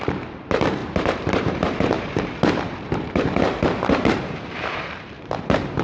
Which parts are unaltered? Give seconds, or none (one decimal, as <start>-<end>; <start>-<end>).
none